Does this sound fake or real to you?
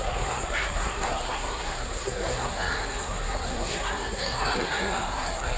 fake